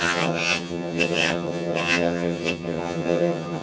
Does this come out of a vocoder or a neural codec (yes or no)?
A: yes